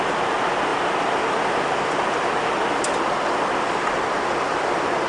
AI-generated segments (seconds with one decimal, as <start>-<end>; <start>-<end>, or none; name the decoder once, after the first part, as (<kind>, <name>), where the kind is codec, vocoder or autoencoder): none